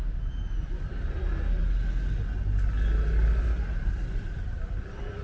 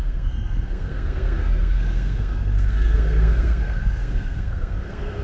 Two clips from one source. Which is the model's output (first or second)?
second